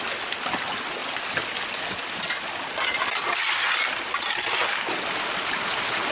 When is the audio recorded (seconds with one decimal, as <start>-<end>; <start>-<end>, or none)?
0.0-6.1